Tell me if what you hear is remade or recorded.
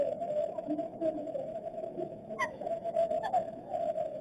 remade